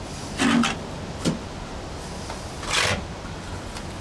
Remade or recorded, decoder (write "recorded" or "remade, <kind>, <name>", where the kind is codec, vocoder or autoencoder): recorded